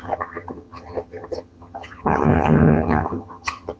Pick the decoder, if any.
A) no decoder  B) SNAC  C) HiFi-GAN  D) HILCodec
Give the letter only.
C